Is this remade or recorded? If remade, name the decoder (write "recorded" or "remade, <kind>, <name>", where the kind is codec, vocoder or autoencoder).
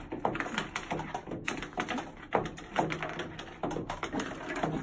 recorded